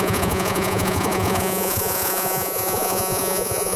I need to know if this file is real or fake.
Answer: fake